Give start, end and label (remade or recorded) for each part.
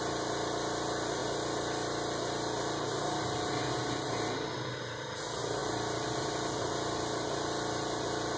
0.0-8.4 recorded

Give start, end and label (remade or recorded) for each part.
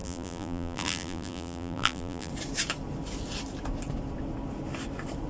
0.0-2.3 remade; 2.3-5.3 recorded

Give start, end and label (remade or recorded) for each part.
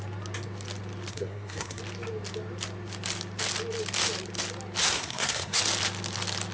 0.0-1.1 recorded; 1.1-1.8 remade; 1.8-4.8 recorded; 4.8-5.6 remade; 5.6-6.5 recorded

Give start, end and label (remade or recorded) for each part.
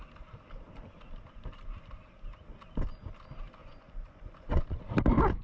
0.0-3.6 recorded; 3.6-4.8 remade; 4.8-5.4 recorded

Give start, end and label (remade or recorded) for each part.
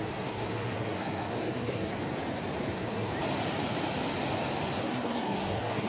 0.0-2.0 remade; 2.0-2.7 recorded; 2.7-3.1 remade; 3.1-4.8 recorded; 4.8-5.9 remade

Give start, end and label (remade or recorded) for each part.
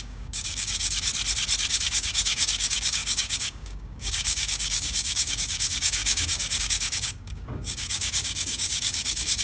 0.0-1.1 remade; 1.1-1.7 recorded; 1.7-9.4 remade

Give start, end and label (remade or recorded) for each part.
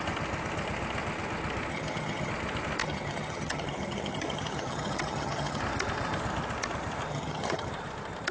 0.0-1.7 recorded; 1.7-2.3 remade; 2.3-2.8 recorded; 2.8-5.6 remade; 5.6-7.1 recorded; 7.1-7.7 remade; 7.7-8.3 recorded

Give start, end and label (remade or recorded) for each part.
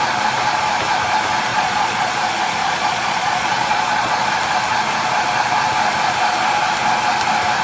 0.0-1.5 recorded; 1.5-2.1 remade; 2.1-2.6 recorded; 2.6-4.3 remade; 4.3-7.6 recorded